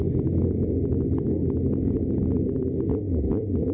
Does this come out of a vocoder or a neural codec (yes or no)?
no